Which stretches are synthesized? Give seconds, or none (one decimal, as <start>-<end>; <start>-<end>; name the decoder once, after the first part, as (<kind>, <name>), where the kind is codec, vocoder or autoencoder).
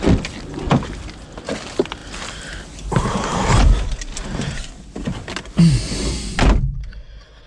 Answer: none